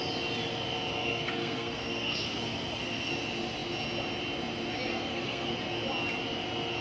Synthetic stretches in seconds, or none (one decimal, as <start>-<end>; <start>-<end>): 0.9-3.1; 4.9-5.5